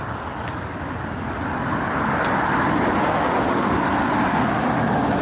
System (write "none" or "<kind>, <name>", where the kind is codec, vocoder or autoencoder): none